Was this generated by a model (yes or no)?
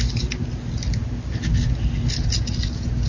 no